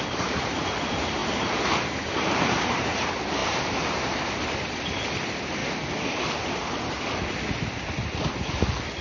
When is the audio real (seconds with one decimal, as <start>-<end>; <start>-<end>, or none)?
5.6-9.0